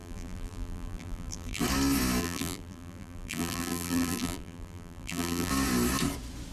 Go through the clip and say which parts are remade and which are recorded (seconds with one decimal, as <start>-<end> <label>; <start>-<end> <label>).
0.0-1.6 remade; 1.6-2.2 recorded; 2.2-5.5 remade; 5.5-6.5 recorded